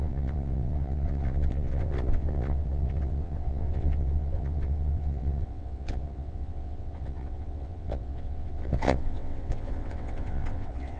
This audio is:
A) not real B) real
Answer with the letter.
A